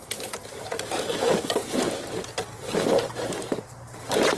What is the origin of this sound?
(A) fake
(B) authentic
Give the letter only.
A